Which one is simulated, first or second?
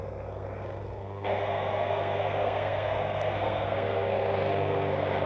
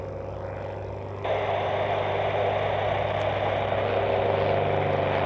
first